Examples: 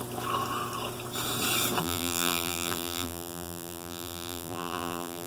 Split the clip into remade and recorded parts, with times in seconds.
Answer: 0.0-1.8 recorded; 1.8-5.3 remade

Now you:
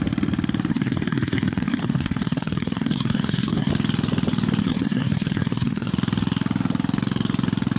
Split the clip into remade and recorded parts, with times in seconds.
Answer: 0.0-0.7 recorded; 0.7-3.7 remade; 3.7-4.6 recorded; 4.6-5.9 remade; 5.9-7.8 recorded

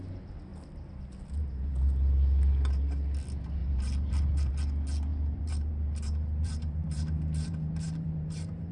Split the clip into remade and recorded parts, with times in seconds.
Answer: 0.0-3.6 recorded; 3.6-4.5 remade; 4.5-5.1 recorded; 5.1-8.7 remade

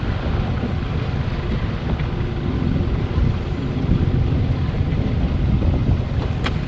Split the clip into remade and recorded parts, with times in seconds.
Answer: 0.0-0.9 remade; 0.9-3.0 recorded; 3.0-5.8 remade; 5.8-6.7 recorded

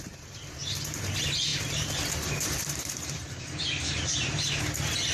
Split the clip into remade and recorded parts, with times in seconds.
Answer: 0.0-1.5 recorded; 1.5-4.6 remade; 4.6-5.1 recorded